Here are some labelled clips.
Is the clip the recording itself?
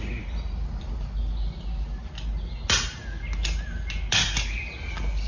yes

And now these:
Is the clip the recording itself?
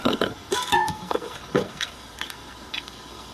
no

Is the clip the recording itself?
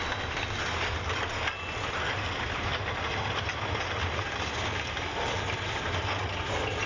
yes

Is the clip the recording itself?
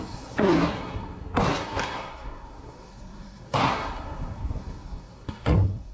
no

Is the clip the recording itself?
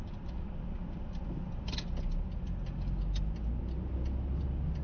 yes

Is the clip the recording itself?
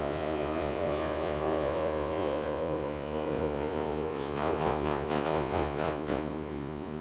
no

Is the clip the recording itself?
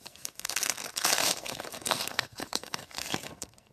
no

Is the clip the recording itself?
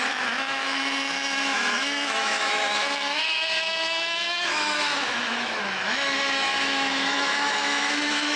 no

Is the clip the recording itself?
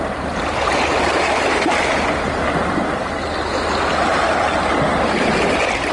yes